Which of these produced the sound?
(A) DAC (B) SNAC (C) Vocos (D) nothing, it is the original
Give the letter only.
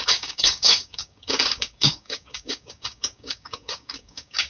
A